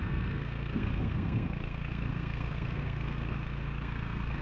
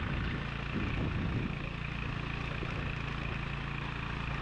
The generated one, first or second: first